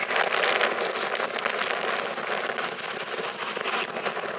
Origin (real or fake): real